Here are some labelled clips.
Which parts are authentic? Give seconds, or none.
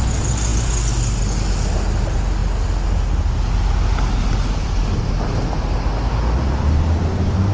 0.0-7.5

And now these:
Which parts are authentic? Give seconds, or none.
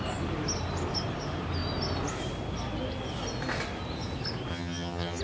0.0-4.5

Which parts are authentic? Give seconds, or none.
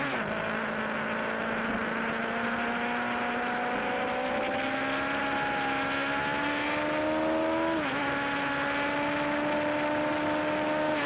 0.0-11.1